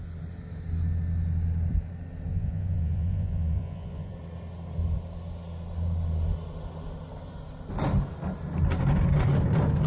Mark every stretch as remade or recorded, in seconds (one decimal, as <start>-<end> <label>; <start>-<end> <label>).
0.0-2.3 recorded; 2.3-4.1 remade; 4.1-9.9 recorded